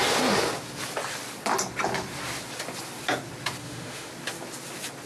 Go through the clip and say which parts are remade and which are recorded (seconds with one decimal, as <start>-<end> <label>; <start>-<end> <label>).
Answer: 0.0-3.6 recorded; 3.6-4.1 remade; 4.1-5.1 recorded